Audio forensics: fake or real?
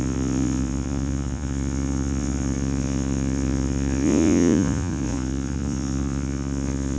fake